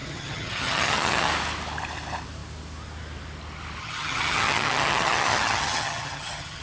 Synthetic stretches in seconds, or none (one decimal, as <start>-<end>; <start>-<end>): 0.0-1.3; 3.8-6.6